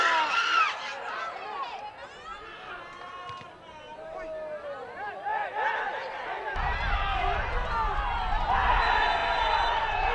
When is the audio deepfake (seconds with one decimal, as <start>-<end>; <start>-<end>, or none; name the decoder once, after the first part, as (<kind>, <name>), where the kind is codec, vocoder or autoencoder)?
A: none